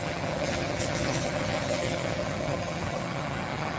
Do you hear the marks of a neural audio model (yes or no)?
yes